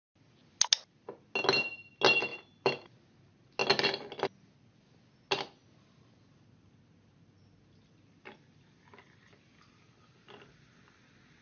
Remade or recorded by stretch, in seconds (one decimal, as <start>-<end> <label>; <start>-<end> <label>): 0.0-2.3 recorded; 2.3-2.9 remade; 2.9-11.4 recorded